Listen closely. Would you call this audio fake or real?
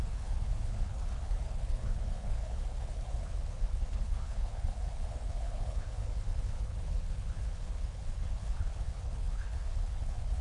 fake